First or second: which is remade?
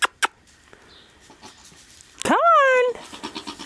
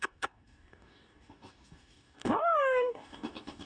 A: second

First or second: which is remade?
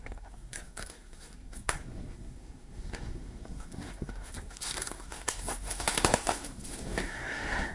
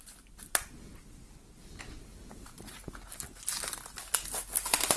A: first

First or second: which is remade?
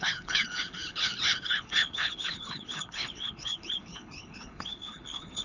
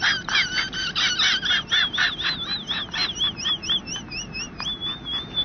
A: first